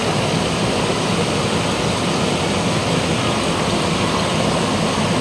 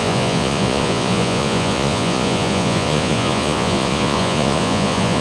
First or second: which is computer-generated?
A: second